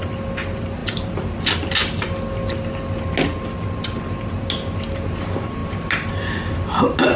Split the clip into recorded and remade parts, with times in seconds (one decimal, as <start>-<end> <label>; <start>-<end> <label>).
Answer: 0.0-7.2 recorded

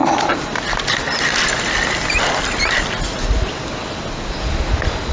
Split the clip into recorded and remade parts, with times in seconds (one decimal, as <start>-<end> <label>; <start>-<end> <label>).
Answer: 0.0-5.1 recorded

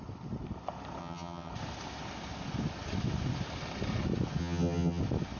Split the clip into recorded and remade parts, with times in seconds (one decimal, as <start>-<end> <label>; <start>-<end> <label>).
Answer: 0.0-1.0 recorded; 1.0-1.5 remade; 1.5-4.4 recorded; 4.4-5.0 remade; 5.0-5.4 recorded

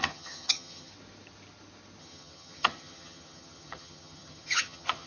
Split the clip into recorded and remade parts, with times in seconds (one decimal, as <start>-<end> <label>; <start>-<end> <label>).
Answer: 0.0-0.9 remade; 0.9-2.0 recorded; 2.0-5.1 remade

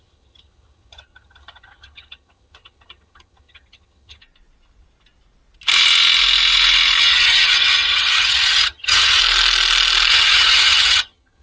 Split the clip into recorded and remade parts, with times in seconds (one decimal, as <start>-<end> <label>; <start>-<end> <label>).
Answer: 0.0-4.2 remade; 4.2-7.0 recorded; 7.0-9.2 remade; 9.2-10.1 recorded; 10.1-11.4 remade

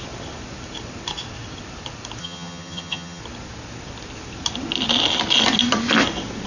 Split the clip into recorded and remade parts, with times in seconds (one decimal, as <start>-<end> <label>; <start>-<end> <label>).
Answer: 0.0-2.2 recorded; 2.2-3.2 remade; 3.2-6.5 recorded

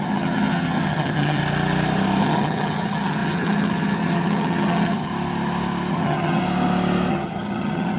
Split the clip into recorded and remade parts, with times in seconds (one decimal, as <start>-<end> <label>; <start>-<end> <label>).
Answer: 0.0-1.4 remade; 1.4-2.2 recorded; 2.2-5.1 remade; 5.1-5.9 recorded; 5.9-6.4 remade; 6.4-7.1 recorded; 7.1-8.0 remade